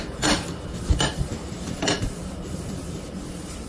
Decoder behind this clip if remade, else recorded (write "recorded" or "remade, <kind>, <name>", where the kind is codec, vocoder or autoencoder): remade, vocoder, BigVGAN v2